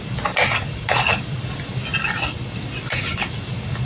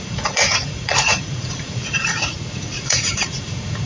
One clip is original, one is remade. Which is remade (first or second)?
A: second